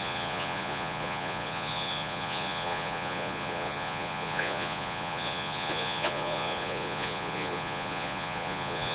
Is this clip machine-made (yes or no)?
yes